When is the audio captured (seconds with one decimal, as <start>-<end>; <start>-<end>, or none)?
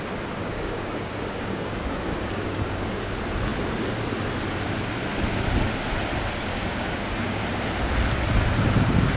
0.0-0.4; 3.1-6.5; 7.4-9.2